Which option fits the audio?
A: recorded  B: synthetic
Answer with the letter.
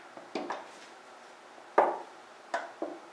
A